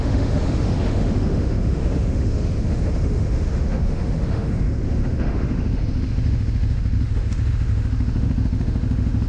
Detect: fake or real fake